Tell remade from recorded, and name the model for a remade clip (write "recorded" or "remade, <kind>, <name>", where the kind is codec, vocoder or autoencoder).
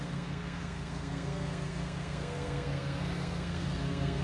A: remade, codec, SNAC